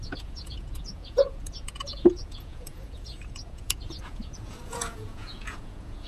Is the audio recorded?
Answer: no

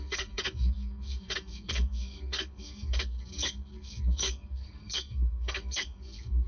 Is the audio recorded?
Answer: no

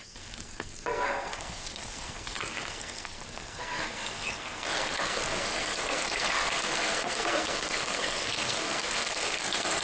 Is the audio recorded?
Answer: no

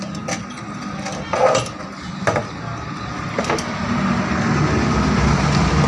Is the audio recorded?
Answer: yes